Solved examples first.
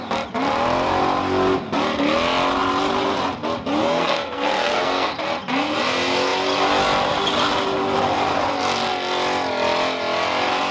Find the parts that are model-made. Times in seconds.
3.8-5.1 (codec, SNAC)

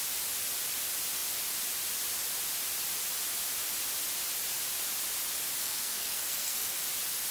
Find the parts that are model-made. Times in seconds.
5.6-6.8 (codec, SNAC)

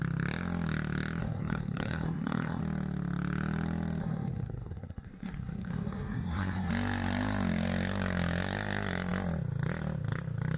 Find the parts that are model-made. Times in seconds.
1.2-2.6 (codec, SNAC); 4.0-6.7

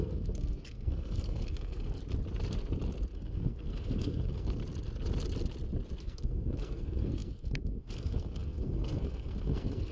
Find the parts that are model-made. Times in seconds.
0.0-2.0 (codec, SNAC); 3.1-4.6; 6.0-9.9

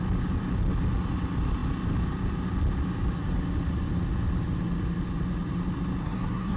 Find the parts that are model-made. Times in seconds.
6.0-6.6 (codec, SNAC)

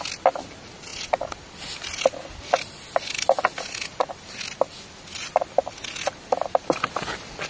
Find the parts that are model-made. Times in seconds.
none